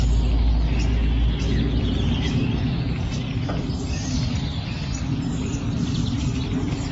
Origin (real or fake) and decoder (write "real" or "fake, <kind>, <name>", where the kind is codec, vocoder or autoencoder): real